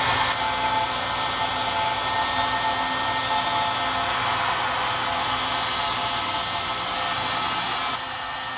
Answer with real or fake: real